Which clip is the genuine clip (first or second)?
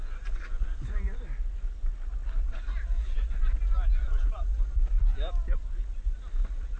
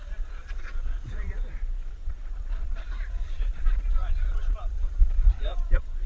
first